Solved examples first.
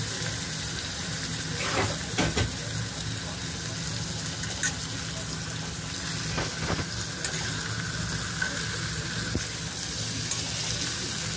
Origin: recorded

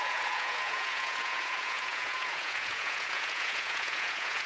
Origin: remade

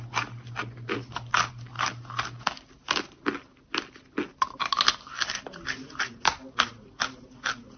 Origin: recorded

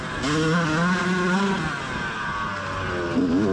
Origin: recorded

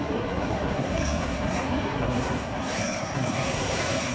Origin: remade